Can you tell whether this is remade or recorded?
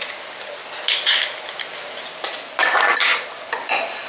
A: recorded